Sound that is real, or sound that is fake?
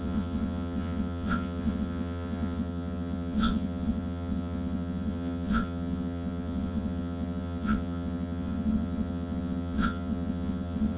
fake